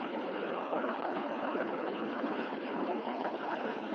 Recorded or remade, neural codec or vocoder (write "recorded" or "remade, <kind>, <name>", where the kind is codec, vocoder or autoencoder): remade, codec, HILCodec